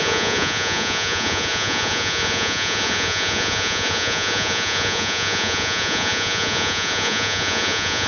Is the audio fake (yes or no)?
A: yes